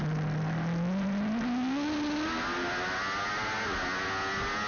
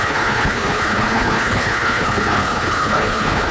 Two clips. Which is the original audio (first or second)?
first